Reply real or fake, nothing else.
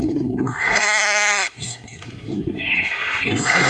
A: fake